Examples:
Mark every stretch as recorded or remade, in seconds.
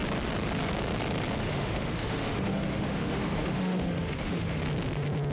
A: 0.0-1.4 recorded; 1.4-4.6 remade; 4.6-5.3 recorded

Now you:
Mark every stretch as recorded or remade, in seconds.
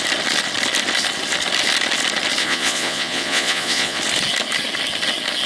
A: 0.0-2.4 recorded; 2.4-4.0 remade; 4.0-5.5 recorded